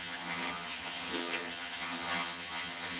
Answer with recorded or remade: remade